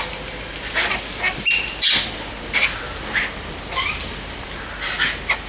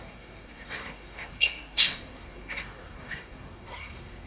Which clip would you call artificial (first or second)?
second